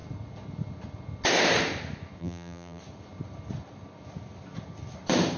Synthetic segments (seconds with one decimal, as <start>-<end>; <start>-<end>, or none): 2.2-2.8